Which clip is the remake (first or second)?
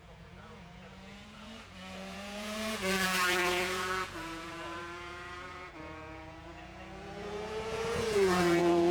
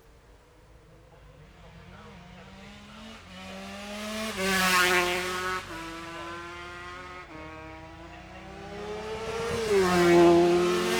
first